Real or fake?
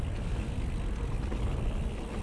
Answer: real